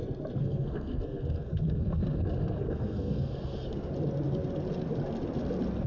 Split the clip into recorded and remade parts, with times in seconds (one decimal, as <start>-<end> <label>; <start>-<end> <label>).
0.0-0.4 recorded; 0.4-3.9 remade; 3.9-5.9 recorded